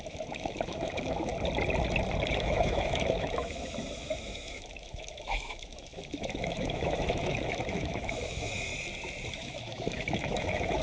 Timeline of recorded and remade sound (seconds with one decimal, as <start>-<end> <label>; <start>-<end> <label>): 0.0-1.3 remade; 1.3-2.3 recorded; 2.3-8.7 remade; 8.7-9.3 recorded; 9.3-10.8 remade